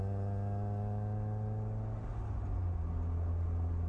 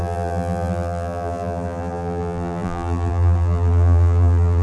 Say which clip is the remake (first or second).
second